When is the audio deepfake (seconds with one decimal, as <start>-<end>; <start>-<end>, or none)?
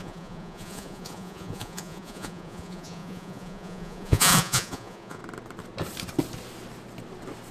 0.0-5.2